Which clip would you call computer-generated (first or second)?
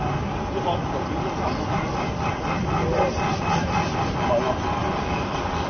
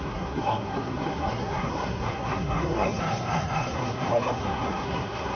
second